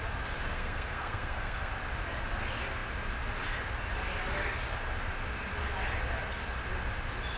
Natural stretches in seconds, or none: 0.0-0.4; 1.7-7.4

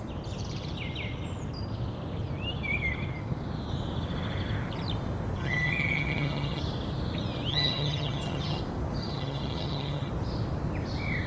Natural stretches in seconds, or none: 0.0-5.4; 6.6-7.5; 8.6-9.0; 10.1-11.3

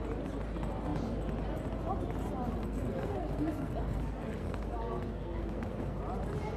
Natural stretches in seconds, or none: 0.0-2.6; 6.0-6.6

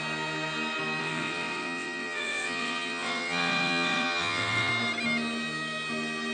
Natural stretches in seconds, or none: 0.0-1.0; 4.7-6.3

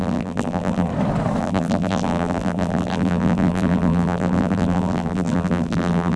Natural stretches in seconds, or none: 0.9-1.4

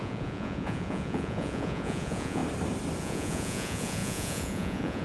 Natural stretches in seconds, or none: 2.4-3.0

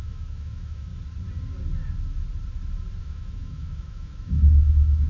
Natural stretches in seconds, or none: 0.9-3.0

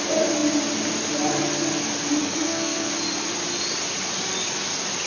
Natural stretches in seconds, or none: 0.0-2.2; 2.9-5.1